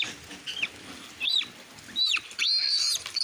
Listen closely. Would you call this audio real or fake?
fake